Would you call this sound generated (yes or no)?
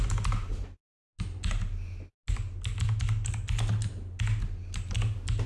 no